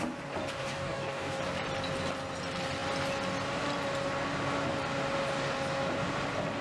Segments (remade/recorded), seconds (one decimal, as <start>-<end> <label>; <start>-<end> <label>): 0.0-0.6 recorded; 0.6-1.4 remade; 1.4-6.6 recorded